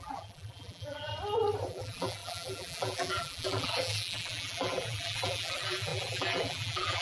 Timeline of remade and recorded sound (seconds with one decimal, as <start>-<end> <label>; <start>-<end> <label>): 0.0-1.1 remade; 1.1-1.7 recorded; 1.7-7.0 remade